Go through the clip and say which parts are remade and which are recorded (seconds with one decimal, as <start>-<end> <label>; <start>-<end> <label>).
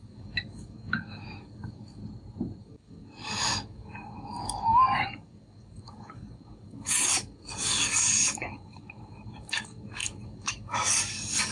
0.0-2.0 remade; 2.0-2.6 recorded; 2.6-11.5 remade